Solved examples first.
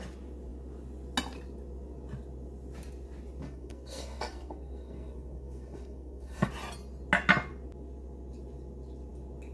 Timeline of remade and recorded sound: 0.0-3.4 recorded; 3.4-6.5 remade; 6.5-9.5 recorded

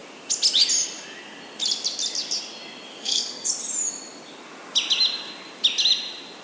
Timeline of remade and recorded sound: 0.0-2.9 recorded; 2.9-3.5 remade; 3.5-6.4 recorded

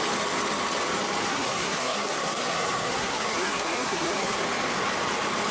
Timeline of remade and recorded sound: 0.0-1.3 recorded; 1.3-4.4 remade; 4.4-5.5 recorded

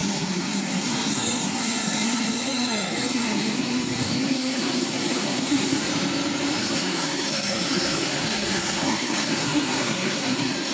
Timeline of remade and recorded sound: 0.0-5.9 remade; 5.9-6.6 recorded; 6.6-10.7 remade

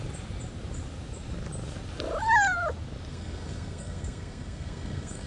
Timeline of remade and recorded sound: 0.0-3.1 recorded; 3.1-5.3 remade

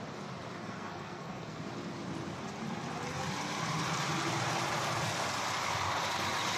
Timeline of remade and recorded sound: 0.0-0.6 recorded; 0.6-1.6 remade; 1.6-6.6 recorded